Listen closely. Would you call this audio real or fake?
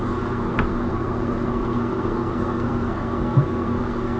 fake